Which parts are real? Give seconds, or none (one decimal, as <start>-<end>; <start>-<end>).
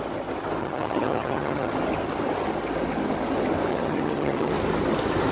0.0-0.6; 1.7-3.7; 4.5-5.3